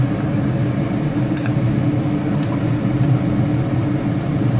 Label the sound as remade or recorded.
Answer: recorded